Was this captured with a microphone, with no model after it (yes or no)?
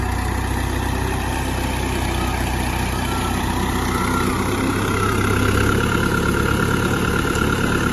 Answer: no